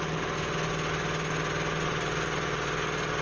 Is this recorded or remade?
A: recorded